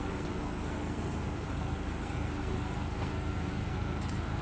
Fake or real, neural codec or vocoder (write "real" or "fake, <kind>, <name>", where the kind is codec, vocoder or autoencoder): fake, codec, SNAC